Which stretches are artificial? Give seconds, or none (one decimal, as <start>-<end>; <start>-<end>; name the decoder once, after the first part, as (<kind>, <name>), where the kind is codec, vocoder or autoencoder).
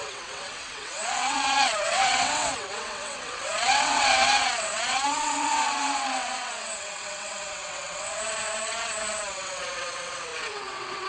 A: 0.0-11.1 (vocoder, WaveNeXt)